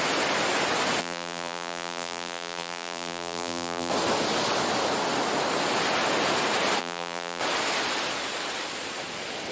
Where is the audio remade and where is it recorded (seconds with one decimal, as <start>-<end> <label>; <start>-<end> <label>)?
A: 0.0-1.0 recorded; 1.0-3.9 remade; 3.9-6.8 recorded; 6.8-7.4 remade; 7.4-9.5 recorded